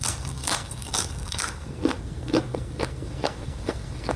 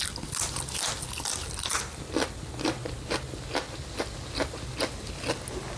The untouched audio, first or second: second